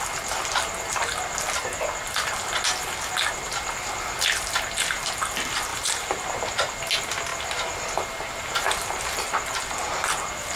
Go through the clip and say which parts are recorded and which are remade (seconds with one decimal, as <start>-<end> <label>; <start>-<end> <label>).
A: 0.0-5.7 recorded; 5.7-6.7 remade; 6.7-10.6 recorded

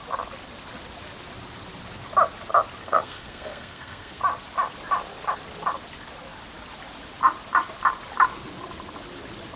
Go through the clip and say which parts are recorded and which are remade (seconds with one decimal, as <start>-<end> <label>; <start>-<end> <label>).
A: 0.0-2.8 recorded; 2.8-4.2 remade; 4.2-9.6 recorded

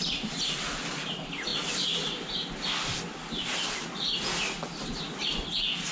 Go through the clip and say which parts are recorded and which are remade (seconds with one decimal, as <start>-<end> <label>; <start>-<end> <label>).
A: 0.0-5.9 recorded

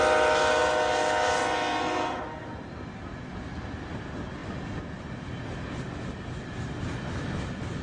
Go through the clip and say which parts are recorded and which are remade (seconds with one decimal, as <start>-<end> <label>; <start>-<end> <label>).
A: 0.0-7.8 recorded

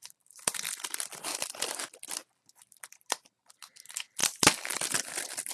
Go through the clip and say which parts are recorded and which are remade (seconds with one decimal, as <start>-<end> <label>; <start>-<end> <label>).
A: 0.0-5.5 remade

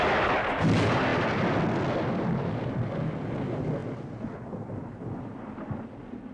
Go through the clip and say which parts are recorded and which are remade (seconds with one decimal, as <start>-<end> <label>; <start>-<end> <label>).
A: 0.0-6.3 recorded

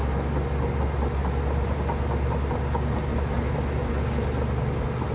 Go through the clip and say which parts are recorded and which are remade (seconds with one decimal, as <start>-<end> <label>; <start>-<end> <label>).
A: 0.0-5.1 recorded